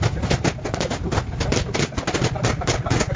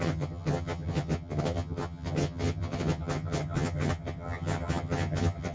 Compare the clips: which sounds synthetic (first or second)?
second